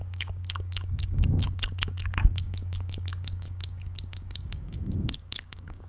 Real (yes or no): no